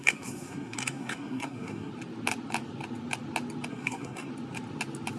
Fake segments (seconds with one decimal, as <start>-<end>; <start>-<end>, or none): 0.0-1.9; 3.7-4.3